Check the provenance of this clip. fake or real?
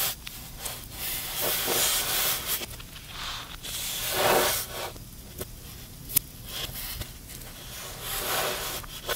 real